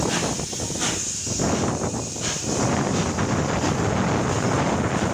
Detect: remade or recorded recorded